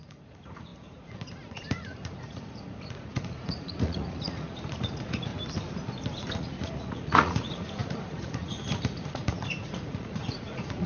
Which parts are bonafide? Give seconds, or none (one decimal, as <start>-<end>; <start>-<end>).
5.3-6.4